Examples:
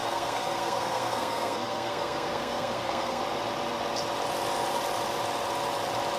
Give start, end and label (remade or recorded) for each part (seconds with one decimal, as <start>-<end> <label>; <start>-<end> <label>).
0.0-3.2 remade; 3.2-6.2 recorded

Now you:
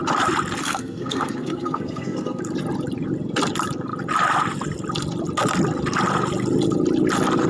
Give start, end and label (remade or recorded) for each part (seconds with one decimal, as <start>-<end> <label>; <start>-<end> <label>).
0.0-0.6 recorded; 0.6-2.4 remade; 2.4-7.5 recorded

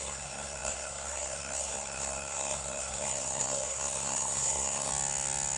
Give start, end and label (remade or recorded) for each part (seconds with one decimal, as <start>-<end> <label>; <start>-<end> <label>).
0.0-4.9 remade; 4.9-5.6 recorded